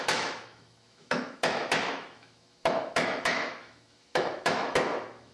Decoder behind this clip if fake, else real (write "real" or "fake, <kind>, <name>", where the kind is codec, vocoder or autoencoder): fake, autoencoder, DAC-VAE